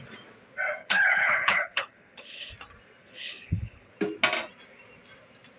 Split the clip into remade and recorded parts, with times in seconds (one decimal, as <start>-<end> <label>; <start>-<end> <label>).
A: 0.0-0.8 recorded; 0.8-2.5 remade; 2.5-3.0 recorded; 3.0-3.9 remade; 3.9-5.6 recorded